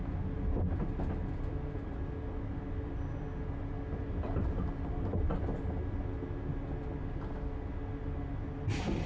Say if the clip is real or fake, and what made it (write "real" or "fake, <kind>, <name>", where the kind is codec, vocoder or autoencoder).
real